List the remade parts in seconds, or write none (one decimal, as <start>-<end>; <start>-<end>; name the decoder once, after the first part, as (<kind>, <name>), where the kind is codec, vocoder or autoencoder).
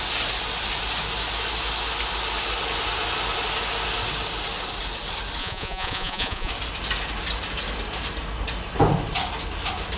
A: 5.4-6.5 (vocoder, Vocos)